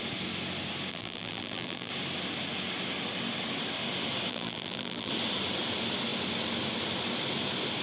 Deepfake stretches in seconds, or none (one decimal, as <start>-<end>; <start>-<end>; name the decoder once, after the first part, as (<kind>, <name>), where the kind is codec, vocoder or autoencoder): 0.9-1.9 (vocoder, BigVGAN v2); 4.3-5.1